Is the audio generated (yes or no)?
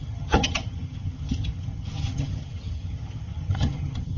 yes